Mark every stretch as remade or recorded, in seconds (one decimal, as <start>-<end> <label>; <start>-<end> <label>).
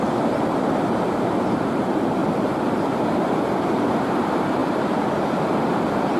0.0-2.2 remade; 2.2-2.7 recorded; 2.7-6.2 remade